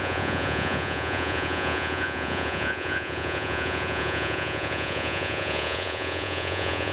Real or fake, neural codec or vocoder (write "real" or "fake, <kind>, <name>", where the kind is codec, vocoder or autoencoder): fake, vocoder, Vocos